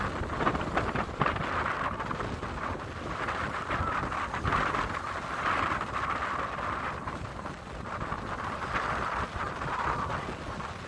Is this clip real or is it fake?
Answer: real